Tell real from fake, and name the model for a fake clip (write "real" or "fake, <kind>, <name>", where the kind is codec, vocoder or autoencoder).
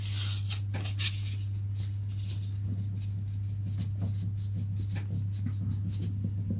real